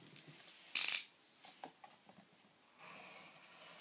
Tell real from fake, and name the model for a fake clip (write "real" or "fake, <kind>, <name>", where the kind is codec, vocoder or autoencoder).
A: real